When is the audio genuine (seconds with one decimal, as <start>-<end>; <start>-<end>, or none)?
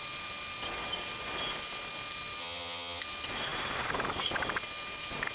0.0-2.4; 3.0-5.3